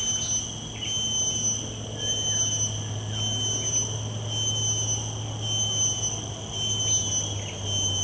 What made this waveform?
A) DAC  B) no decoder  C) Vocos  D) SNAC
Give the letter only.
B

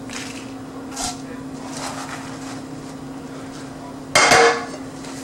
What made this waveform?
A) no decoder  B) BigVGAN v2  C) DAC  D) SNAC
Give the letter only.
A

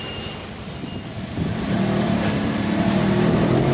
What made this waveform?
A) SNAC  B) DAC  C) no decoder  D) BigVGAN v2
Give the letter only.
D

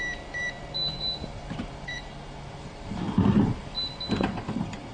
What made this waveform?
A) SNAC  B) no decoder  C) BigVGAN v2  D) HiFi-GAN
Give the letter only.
C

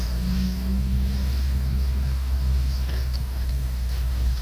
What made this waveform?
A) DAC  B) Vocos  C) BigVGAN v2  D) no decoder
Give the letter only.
A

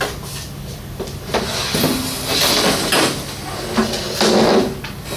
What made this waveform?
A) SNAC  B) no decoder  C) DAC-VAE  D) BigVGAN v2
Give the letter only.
B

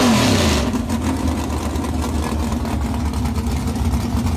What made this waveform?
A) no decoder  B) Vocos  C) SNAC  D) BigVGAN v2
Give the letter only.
A